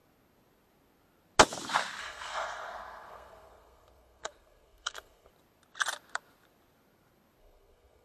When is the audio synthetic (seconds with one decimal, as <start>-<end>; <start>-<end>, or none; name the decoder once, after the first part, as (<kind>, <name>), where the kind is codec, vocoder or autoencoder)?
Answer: 2.0-5.3 (codec, SNAC); 7.4-8.0